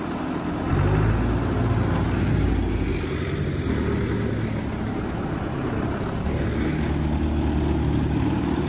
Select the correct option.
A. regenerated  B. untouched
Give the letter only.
B